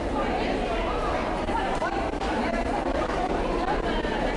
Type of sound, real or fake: fake